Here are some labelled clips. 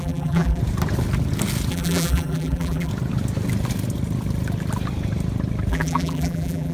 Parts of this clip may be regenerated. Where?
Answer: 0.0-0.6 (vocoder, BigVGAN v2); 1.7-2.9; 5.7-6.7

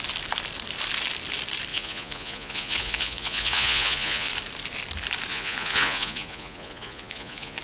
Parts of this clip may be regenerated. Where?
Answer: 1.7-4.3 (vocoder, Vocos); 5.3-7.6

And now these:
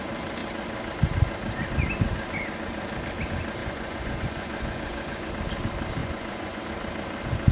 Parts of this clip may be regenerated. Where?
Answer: 3.6-5.3 (vocoder, Vocos); 6.0-6.6

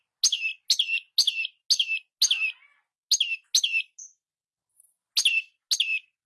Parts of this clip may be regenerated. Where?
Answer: none

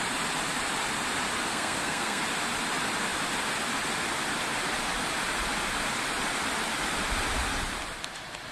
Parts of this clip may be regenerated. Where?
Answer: 1.5-2.2 (codec, SNAC)

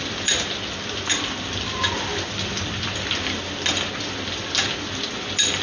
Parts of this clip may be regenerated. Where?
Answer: none